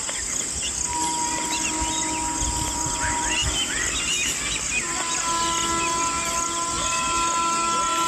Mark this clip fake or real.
real